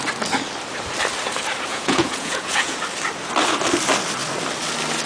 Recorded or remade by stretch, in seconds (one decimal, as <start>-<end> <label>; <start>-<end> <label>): 0.0-1.7 recorded; 1.7-2.8 remade; 2.8-5.1 recorded